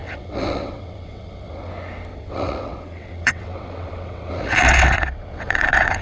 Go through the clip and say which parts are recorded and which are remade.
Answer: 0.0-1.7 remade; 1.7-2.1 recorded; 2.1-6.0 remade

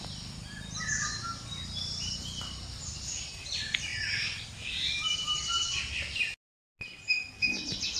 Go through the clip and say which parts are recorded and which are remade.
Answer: 0.0-8.0 recorded

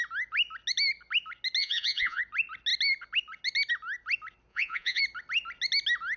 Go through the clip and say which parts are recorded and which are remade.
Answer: 0.0-1.6 recorded; 1.6-2.2 remade; 2.2-4.5 recorded; 4.5-5.0 remade; 5.0-6.2 recorded

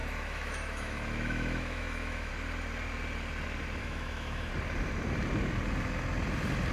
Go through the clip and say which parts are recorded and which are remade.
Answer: 0.0-2.3 remade; 2.3-3.8 recorded; 3.8-4.5 remade; 4.5-6.7 recorded

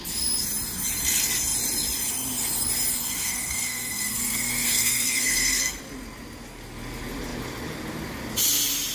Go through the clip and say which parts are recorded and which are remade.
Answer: 0.0-2.9 recorded; 2.9-5.8 remade; 5.8-8.9 recorded

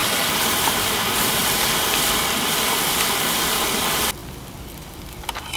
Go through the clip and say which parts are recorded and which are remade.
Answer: 0.0-3.4 remade; 3.4-4.2 recorded; 4.2-5.0 remade; 5.0-5.6 recorded

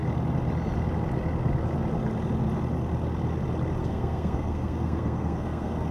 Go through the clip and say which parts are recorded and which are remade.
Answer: 0.0-3.8 recorded; 3.8-5.9 remade